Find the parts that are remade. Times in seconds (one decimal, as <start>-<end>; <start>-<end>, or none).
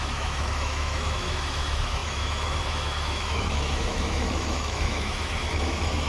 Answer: 0.0-6.1